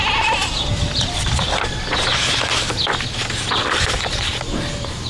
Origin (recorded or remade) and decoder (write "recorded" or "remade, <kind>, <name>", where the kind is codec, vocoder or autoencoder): recorded